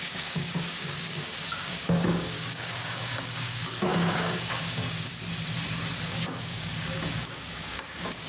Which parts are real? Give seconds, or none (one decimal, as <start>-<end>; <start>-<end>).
5.1-6.1